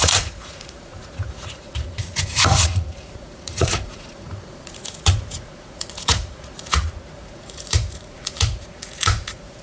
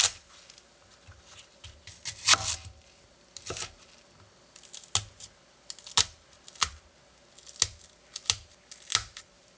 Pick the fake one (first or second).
first